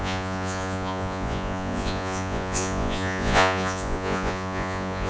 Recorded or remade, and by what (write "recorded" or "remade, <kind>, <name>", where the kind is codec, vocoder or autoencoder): remade, vocoder, Vocos